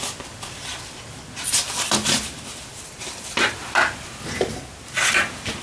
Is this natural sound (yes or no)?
yes